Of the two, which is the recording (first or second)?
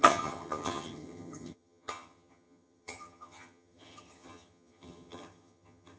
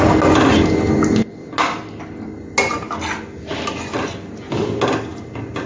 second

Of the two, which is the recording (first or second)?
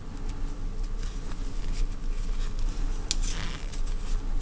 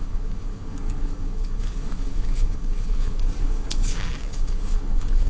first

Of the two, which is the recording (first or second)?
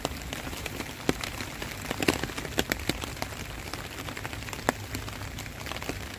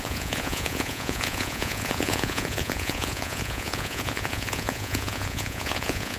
first